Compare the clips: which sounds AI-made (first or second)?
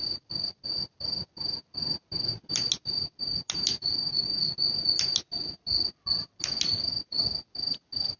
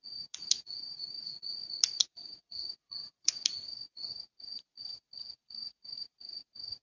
second